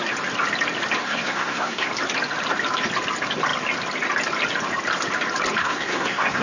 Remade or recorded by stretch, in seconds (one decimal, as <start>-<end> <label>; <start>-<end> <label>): 0.0-1.0 recorded; 1.0-1.9 remade; 1.9-5.6 recorded; 5.6-6.4 remade